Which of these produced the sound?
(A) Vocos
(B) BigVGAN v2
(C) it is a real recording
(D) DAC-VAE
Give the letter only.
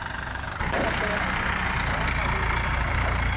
B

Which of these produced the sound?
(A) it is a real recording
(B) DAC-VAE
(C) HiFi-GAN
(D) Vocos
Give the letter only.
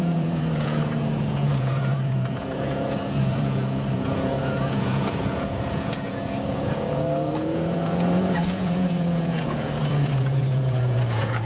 D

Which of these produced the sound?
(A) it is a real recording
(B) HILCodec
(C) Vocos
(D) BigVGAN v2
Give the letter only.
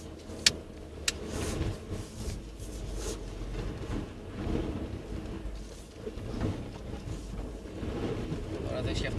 A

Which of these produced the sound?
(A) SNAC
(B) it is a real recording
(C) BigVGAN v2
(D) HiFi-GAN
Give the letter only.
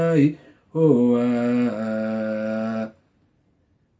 B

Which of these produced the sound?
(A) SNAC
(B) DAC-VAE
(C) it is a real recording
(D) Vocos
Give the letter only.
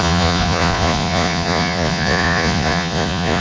D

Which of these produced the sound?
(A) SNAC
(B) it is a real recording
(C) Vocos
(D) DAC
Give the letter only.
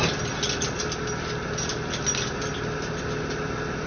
B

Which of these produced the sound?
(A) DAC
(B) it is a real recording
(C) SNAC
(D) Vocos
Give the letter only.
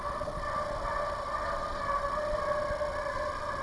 B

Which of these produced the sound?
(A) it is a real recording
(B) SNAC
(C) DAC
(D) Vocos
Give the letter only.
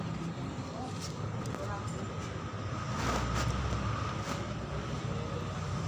A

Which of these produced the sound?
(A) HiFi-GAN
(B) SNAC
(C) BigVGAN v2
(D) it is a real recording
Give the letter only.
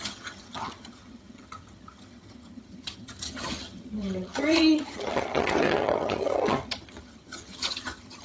A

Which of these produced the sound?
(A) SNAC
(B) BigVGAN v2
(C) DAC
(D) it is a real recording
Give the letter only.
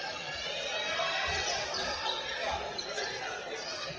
D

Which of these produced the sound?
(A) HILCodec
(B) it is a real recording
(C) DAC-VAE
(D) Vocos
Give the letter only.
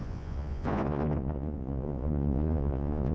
D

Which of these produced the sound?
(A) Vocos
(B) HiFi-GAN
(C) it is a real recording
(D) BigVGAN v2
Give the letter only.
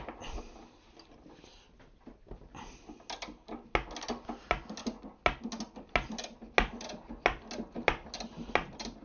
C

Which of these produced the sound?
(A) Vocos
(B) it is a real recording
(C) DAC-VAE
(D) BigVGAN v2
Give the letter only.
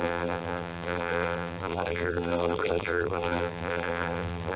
D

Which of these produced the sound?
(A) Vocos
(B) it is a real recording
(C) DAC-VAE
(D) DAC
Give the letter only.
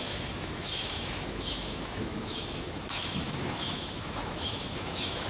C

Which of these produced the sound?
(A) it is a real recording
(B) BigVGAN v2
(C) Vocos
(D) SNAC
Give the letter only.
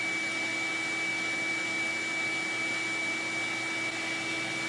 A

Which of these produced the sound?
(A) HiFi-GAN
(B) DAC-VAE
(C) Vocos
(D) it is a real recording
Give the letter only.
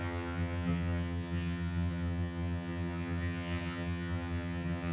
A